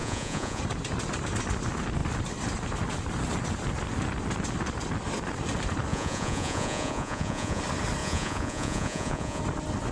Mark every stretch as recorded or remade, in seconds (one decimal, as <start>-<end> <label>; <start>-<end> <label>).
0.0-0.6 remade; 0.6-5.9 recorded; 5.9-7.6 remade; 7.6-8.0 recorded; 8.0-9.4 remade; 9.4-9.9 recorded